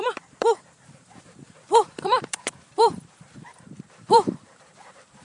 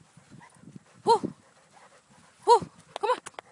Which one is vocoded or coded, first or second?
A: first